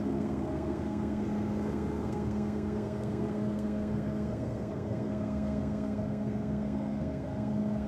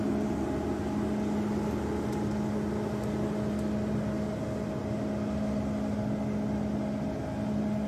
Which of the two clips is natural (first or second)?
second